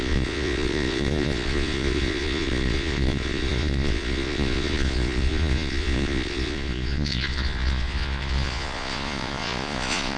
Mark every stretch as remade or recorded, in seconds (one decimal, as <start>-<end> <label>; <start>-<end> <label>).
0.0-10.2 remade